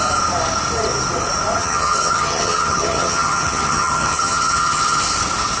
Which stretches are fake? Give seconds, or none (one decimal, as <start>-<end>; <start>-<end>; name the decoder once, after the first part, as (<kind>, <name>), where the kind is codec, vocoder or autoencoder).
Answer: 1.6-5.0 (vocoder, HiFi-GAN)